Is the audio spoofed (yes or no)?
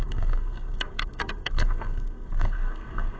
yes